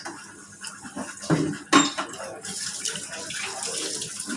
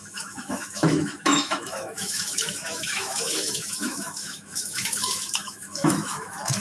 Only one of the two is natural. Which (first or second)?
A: first